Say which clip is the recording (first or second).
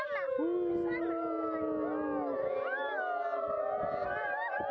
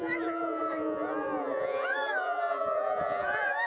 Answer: first